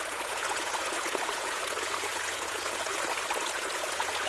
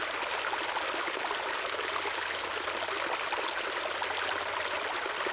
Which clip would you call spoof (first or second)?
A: first